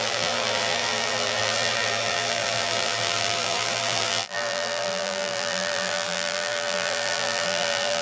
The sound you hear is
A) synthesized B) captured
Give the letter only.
A